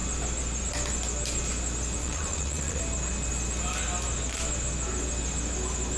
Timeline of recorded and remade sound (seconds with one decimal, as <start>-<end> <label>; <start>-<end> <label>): 0.0-2.0 recorded; 2.0-2.8 remade; 2.8-6.0 recorded